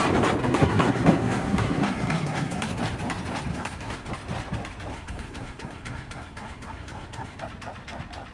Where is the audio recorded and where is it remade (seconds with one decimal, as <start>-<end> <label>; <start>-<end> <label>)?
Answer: 0.0-0.4 recorded; 0.4-2.8 remade; 2.8-3.5 recorded; 3.5-4.1 remade; 4.1-4.9 recorded; 4.9-7.4 remade; 7.4-8.3 recorded